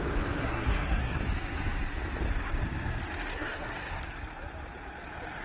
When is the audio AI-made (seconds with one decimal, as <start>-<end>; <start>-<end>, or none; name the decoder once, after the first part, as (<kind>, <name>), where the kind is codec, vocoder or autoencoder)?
0.4-1.2 (codec, SNAC); 3.3-4.0